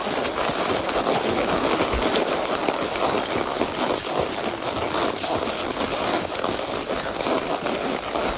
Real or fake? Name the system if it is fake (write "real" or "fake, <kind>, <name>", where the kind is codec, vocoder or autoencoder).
real